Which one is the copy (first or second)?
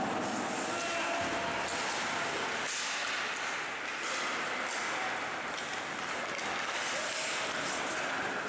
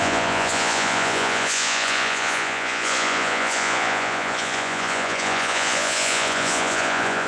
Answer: second